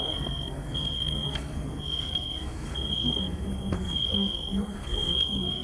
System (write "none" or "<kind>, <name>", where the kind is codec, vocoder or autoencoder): codec, SNAC